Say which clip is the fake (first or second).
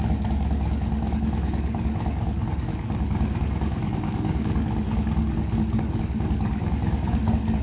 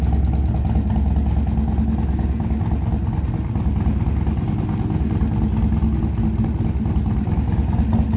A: first